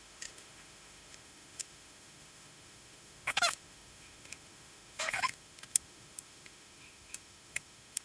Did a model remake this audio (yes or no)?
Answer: yes